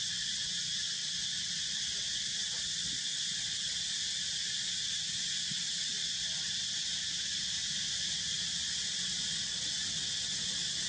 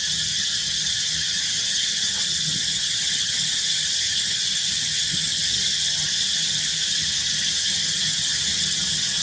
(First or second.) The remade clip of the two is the second